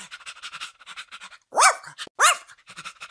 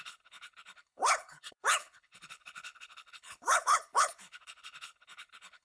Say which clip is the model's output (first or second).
second